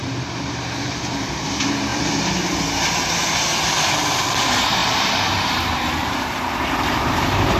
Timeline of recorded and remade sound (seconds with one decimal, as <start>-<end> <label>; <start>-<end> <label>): 0.0-1.9 remade; 1.9-3.7 recorded; 3.7-7.6 remade